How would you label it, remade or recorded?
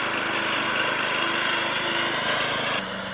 recorded